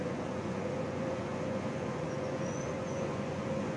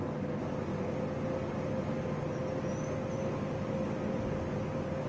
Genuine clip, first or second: second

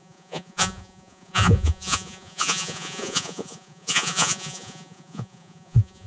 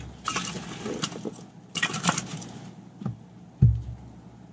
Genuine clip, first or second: second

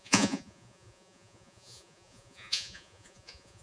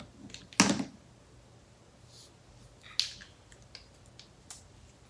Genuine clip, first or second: second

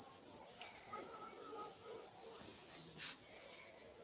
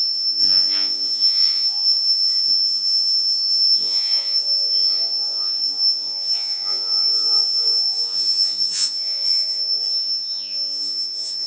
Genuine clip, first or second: first